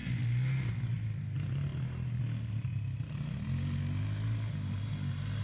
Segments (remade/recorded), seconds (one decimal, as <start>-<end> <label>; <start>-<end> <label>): 0.0-5.4 recorded